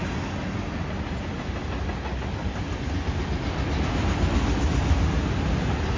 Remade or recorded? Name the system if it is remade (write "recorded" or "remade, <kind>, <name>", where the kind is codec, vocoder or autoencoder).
recorded